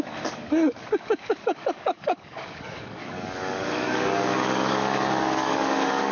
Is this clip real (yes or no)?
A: no